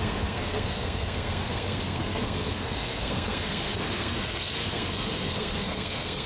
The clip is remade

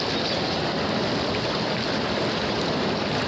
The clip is recorded